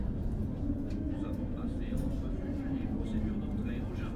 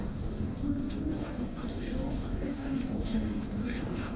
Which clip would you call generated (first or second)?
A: second